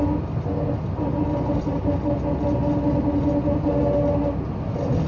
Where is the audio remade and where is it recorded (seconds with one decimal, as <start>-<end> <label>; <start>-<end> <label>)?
0.0-5.1 recorded